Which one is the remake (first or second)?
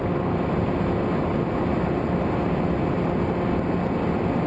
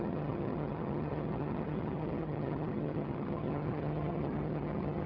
second